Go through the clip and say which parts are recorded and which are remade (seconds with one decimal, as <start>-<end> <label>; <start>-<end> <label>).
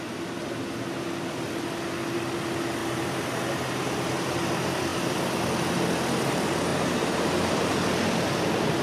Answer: 0.0-2.8 recorded; 2.8-3.6 remade; 3.6-6.7 recorded; 6.7-7.3 remade; 7.3-8.8 recorded